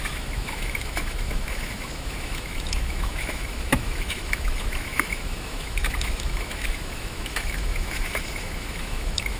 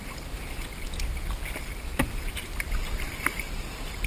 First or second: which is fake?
first